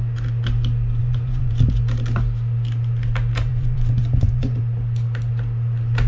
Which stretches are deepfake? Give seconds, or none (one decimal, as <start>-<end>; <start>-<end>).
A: 1.0-1.5; 3.5-4.6